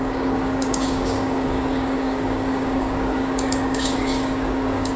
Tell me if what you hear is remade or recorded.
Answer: remade